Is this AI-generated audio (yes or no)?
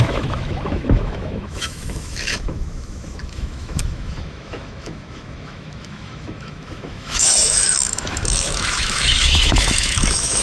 yes